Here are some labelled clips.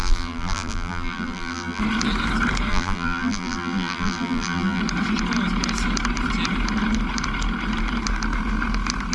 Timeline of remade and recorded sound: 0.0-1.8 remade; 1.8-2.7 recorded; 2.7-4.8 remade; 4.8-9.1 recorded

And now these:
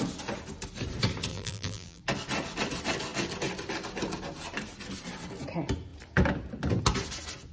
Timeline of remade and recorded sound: 0.0-1.3 recorded; 1.3-2.0 remade; 2.0-7.5 recorded

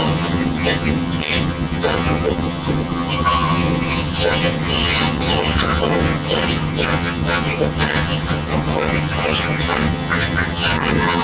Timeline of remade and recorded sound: 0.0-11.2 remade

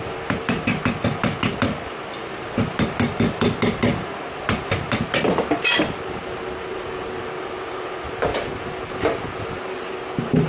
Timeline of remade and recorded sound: 0.0-10.5 recorded